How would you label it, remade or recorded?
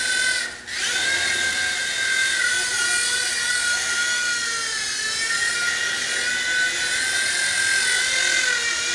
recorded